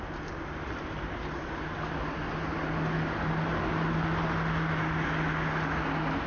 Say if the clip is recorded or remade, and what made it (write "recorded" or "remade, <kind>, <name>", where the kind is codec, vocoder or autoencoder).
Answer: recorded